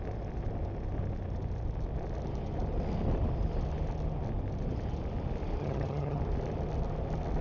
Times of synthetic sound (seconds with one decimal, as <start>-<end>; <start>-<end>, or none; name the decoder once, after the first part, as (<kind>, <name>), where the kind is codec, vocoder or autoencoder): 5.6-6.2 (vocoder, HiFi-GAN)